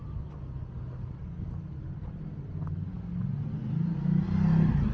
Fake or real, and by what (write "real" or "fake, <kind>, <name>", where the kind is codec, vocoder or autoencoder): real